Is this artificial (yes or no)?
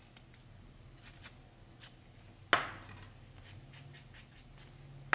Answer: no